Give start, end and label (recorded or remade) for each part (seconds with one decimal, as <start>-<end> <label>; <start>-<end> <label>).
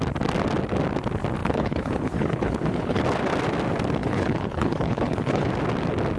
0.0-1.4 recorded; 1.4-3.0 remade; 3.0-4.0 recorded; 4.0-5.5 remade; 5.5-6.2 recorded